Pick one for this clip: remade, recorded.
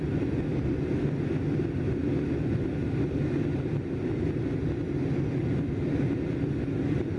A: recorded